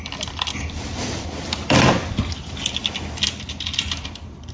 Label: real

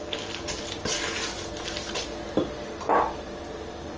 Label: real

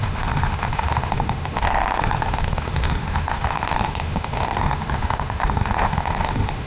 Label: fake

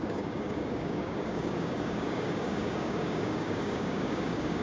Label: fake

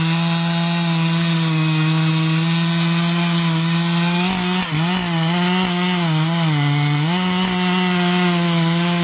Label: real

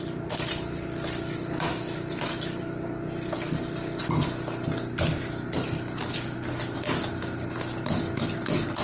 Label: real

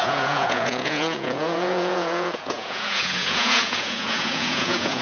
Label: fake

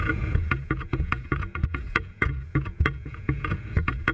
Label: fake